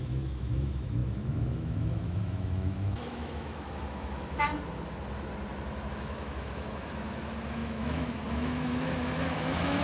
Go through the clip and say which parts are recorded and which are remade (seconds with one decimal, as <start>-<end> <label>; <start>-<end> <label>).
0.0-4.5 remade; 4.5-5.9 recorded; 5.9-9.8 remade

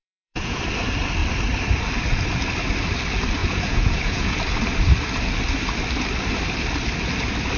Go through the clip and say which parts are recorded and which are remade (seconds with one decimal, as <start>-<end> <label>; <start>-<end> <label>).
0.0-0.6 remade; 0.6-3.4 recorded; 3.4-4.4 remade; 4.4-7.6 recorded

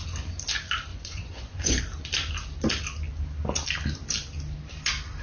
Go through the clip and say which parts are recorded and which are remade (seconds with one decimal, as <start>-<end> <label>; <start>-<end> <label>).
0.0-0.9 recorded; 0.9-1.8 remade; 1.8-5.2 recorded

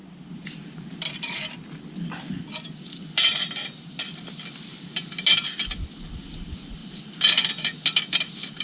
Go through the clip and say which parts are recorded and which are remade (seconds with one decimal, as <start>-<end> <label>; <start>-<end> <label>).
0.0-8.6 recorded

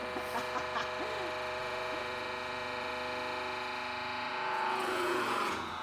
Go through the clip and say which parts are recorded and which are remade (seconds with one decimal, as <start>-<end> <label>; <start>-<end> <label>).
0.0-1.6 recorded; 1.6-2.9 remade; 2.9-4.3 recorded; 4.3-5.8 remade

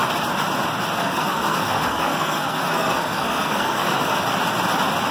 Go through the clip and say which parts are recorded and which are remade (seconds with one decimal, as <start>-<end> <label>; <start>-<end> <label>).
0.0-1.0 recorded; 1.0-4.1 remade; 4.1-5.1 recorded